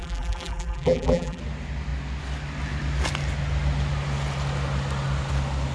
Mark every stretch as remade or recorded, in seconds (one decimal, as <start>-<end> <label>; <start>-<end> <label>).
0.0-1.4 remade; 1.4-5.7 recorded